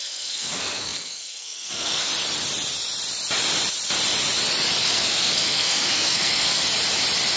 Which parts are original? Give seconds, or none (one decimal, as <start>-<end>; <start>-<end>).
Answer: 2.1-4.8; 6.6-7.4